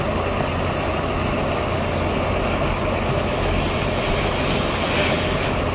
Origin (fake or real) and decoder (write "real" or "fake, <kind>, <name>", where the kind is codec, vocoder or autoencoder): real